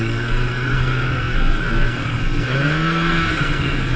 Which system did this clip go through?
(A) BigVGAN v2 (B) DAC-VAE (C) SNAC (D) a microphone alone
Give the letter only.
C